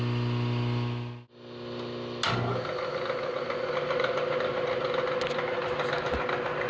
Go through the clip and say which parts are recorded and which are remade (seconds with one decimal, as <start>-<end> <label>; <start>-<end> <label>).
0.0-6.7 recorded